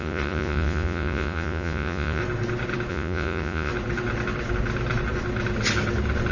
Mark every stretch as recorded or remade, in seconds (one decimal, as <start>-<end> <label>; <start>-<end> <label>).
0.0-2.2 remade; 2.2-2.9 recorded; 2.9-3.7 remade; 3.7-6.3 recorded